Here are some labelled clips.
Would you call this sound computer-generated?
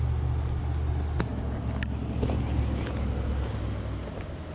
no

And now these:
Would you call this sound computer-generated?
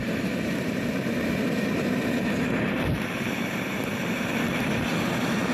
yes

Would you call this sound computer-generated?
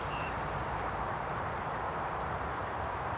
yes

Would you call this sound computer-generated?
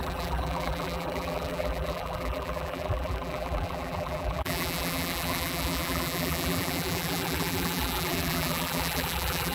yes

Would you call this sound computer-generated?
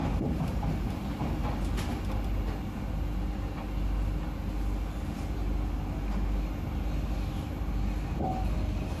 no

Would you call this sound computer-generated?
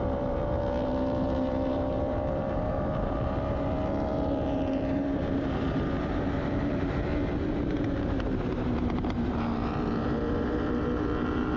yes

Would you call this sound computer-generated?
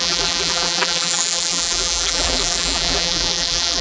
yes